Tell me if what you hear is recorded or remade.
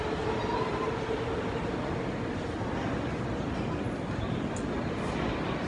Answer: recorded